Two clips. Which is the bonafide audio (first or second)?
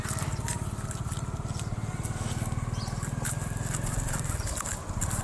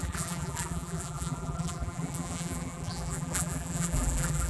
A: first